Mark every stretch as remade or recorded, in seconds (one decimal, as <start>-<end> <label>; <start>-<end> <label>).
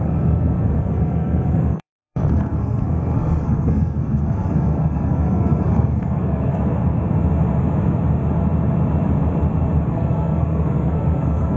0.0-6.8 remade; 6.8-9.9 recorded; 9.9-11.6 remade